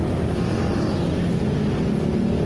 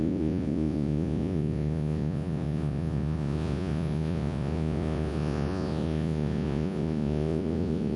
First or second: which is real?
first